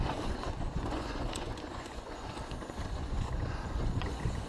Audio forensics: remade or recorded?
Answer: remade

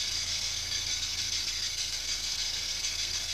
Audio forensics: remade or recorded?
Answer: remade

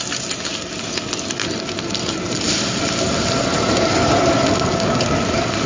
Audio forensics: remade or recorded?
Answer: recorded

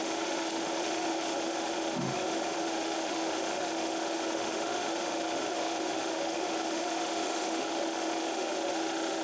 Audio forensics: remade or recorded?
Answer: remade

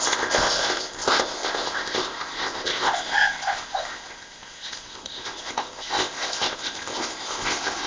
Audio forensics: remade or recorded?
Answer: remade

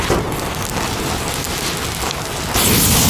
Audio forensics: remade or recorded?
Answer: recorded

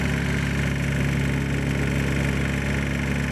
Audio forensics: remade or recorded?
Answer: recorded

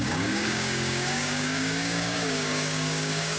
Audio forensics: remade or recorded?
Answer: remade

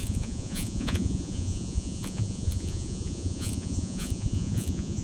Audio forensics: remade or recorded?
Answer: remade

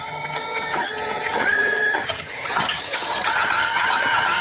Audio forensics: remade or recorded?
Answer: remade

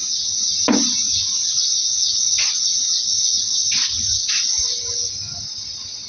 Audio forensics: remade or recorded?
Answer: recorded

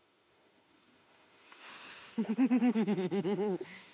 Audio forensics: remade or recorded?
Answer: remade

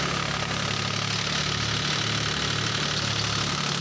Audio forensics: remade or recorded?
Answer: recorded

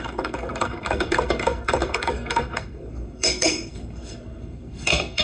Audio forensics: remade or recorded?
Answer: remade